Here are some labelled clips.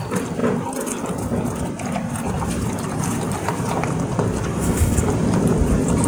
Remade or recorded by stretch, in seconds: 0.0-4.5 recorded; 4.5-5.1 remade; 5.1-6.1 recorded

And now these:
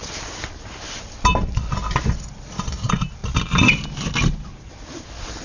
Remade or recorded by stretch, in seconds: 0.0-5.4 recorded

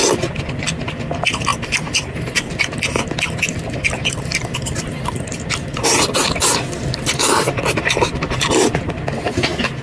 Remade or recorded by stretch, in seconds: 0.0-9.8 recorded

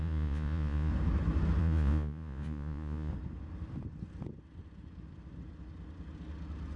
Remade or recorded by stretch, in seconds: 0.0-0.9 remade; 0.9-1.6 recorded; 1.6-3.1 remade; 3.1-6.8 recorded

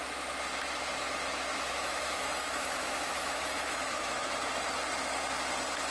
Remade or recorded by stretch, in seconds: 0.0-1.5 recorded; 1.5-4.3 remade; 4.3-5.9 recorded

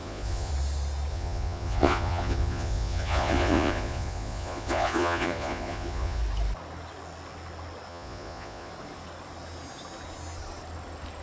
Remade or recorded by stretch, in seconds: 0.0-0.5 remade; 0.5-1.1 recorded; 1.1-6.2 remade; 6.2-7.9 recorded; 7.9-8.7 remade; 8.7-11.2 recorded

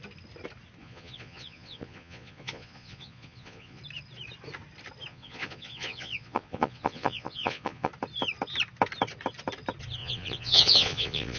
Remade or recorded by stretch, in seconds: 0.0-0.8 recorded; 0.8-3.8 remade; 3.8-5.1 recorded; 5.1-7.9 remade; 7.9-10.0 recorded; 10.0-11.4 remade